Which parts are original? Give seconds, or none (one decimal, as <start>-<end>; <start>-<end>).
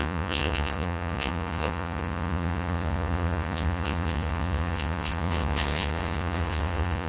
none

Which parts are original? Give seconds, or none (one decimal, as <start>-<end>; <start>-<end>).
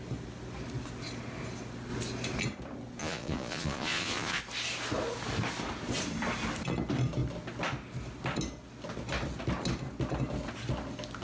0.0-3.0; 4.4-11.2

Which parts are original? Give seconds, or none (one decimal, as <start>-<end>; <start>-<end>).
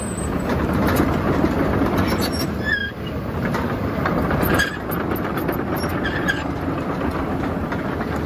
0.0-2.8; 4.4-8.3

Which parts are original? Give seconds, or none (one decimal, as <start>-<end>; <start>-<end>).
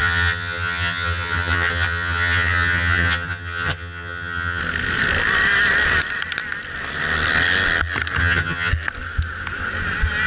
4.6-8.2; 8.7-10.3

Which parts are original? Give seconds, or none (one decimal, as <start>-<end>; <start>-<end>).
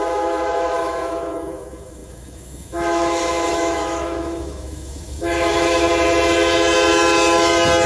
5.9-7.9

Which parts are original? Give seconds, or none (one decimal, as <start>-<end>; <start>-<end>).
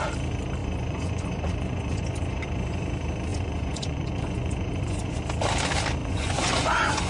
0.0-0.6; 2.8-3.3; 5.2-6.0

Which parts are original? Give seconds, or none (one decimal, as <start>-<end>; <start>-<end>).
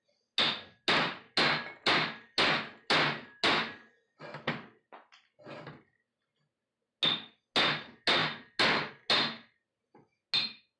0.0-10.8